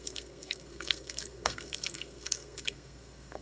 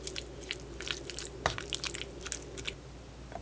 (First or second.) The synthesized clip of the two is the first